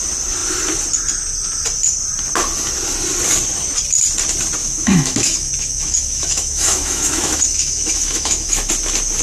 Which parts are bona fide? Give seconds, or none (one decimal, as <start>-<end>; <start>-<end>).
0.0-4.6; 8.7-9.2